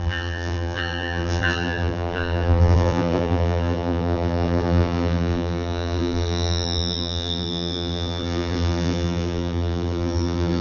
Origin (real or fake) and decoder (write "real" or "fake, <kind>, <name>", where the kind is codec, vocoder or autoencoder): fake, vocoder, BigVGAN v2